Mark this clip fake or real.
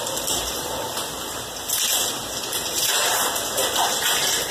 fake